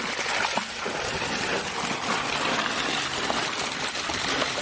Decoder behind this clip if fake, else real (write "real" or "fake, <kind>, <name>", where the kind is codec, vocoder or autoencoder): real